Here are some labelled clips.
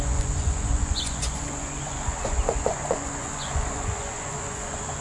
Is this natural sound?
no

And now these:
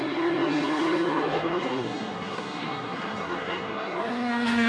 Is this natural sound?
no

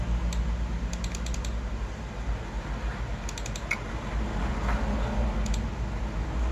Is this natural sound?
yes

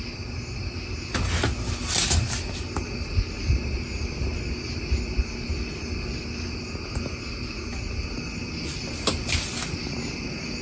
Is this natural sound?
yes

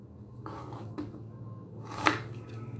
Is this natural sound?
no